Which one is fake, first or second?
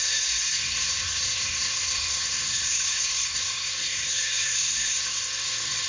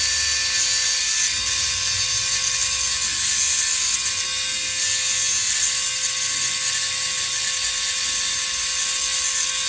first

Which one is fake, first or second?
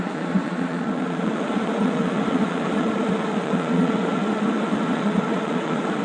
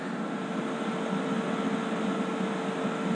first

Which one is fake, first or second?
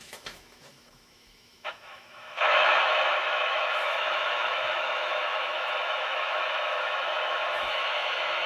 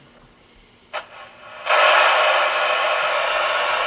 first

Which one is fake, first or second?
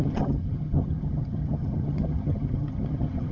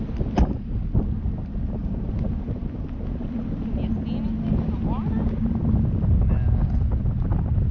first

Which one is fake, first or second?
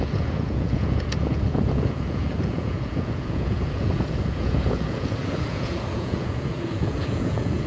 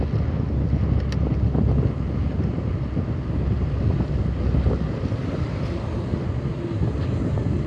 first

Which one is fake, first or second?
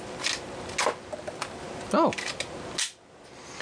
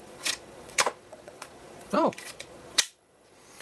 second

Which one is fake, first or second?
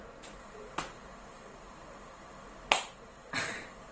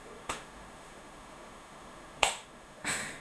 second